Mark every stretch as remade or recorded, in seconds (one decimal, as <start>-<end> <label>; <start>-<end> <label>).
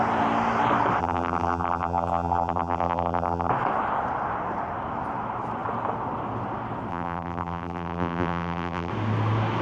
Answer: 0.0-1.0 recorded; 1.0-3.5 remade; 3.5-6.9 recorded; 6.9-8.9 remade; 8.9-9.6 recorded